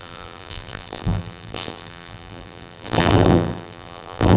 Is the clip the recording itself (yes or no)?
no